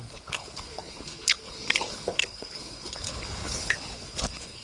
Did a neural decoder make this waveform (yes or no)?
yes